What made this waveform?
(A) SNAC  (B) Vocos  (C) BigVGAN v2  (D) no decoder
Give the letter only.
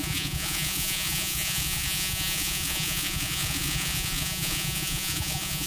B